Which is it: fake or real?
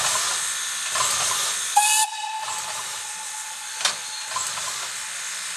fake